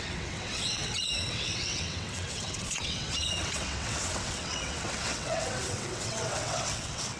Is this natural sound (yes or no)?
no